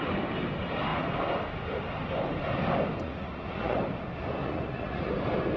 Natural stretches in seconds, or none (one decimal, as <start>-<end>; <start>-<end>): 0.0-3.0; 3.8-4.4; 5.1-5.6